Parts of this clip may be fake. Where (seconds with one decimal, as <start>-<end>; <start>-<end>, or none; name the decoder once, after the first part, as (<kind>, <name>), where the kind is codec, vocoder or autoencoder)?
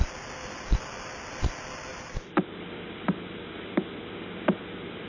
none